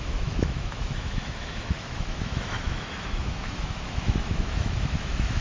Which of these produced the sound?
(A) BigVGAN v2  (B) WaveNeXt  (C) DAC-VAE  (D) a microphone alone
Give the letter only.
C